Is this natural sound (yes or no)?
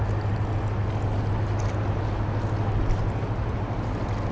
yes